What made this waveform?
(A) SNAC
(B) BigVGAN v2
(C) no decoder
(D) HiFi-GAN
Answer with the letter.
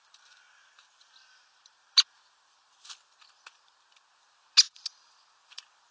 C